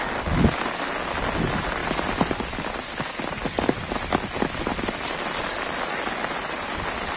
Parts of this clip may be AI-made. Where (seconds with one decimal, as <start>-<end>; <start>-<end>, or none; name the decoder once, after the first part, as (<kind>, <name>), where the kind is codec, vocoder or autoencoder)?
none